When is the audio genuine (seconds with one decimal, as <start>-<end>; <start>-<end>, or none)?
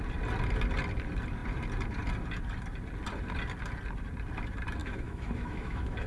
0.0-4.8